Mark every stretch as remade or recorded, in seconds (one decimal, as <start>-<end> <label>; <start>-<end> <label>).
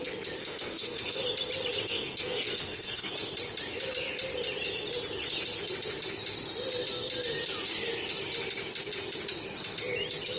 0.0-0.4 recorded; 0.4-1.2 remade; 1.2-1.8 recorded; 1.8-3.1 remade; 3.1-10.4 recorded